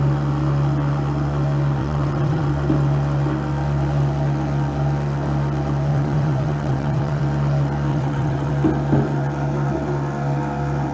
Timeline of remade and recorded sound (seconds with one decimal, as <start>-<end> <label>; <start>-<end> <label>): 0.0-1.8 recorded; 1.8-2.5 remade; 2.5-5.9 recorded; 5.9-7.2 remade; 7.2-7.9 recorded; 7.9-8.5 remade; 8.5-10.9 recorded